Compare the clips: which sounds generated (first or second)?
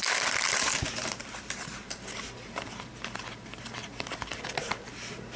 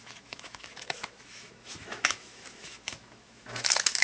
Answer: second